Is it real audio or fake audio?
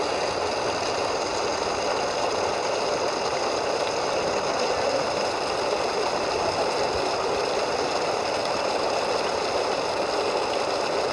real